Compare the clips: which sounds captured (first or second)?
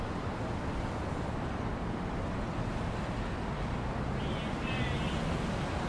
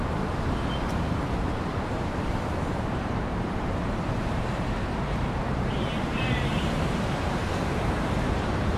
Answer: first